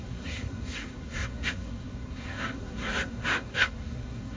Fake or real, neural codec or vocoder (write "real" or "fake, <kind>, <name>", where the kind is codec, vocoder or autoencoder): fake, codec, SNAC